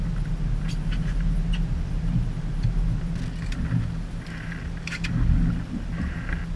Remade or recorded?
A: recorded